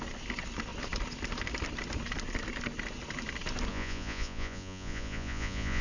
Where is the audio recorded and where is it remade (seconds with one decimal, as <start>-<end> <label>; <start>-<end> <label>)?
0.0-3.7 recorded; 3.7-5.8 remade